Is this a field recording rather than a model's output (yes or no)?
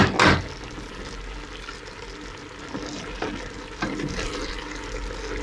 yes